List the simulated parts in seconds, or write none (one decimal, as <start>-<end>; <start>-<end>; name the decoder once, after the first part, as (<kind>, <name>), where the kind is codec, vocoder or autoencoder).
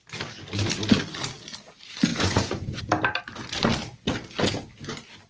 2.1-2.8 (vocoder, Vocos)